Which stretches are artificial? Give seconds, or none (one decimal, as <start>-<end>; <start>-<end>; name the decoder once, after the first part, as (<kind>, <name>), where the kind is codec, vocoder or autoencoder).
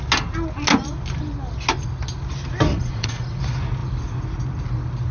2.7-3.4 (vocoder, Vocos)